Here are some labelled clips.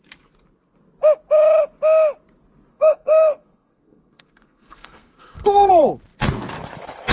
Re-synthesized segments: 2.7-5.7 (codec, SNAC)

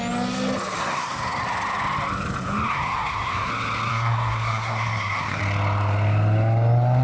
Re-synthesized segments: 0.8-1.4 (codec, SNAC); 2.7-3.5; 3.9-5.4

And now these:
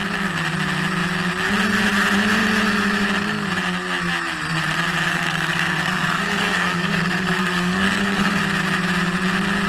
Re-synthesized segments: 5.1-8.4 (codec, SNAC)